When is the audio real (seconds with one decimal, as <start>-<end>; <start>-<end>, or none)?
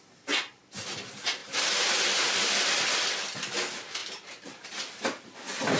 0.0-1.4; 2.9-4.0; 4.8-5.8